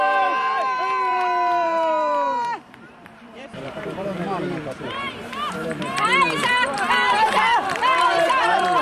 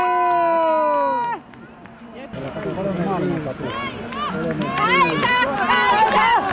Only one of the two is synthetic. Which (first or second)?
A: first